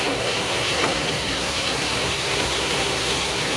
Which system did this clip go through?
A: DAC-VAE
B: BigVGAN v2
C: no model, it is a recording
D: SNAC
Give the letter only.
D